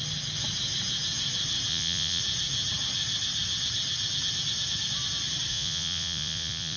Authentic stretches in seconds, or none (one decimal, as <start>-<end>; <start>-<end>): 0.0-1.7; 2.2-5.5